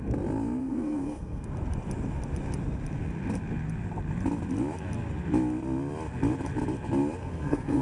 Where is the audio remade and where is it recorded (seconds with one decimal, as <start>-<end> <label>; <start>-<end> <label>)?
0.0-0.6 recorded; 0.6-1.5 remade; 1.5-7.2 recorded; 7.2-7.8 remade